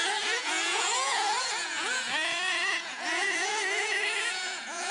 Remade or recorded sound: remade